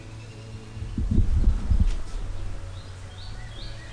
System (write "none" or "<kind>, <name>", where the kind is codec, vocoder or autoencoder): none